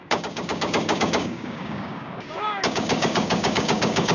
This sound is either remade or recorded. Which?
remade